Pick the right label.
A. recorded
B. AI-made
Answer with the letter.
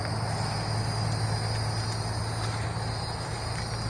A